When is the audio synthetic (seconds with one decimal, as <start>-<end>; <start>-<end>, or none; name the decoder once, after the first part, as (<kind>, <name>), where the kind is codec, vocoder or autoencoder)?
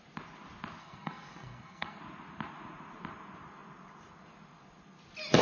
0.8-2.0 (codec, SNAC)